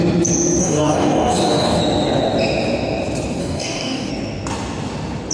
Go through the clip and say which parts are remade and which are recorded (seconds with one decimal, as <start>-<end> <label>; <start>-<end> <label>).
0.0-0.6 recorded; 0.6-1.8 remade; 1.8-3.4 recorded; 3.4-4.1 remade; 4.1-5.3 recorded